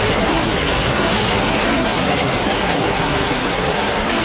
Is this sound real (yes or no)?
no